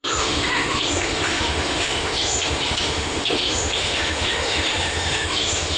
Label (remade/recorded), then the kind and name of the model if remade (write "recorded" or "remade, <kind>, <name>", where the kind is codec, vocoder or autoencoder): remade, autoencoder, DAC-VAE